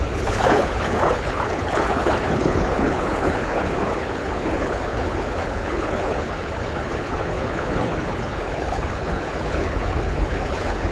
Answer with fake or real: fake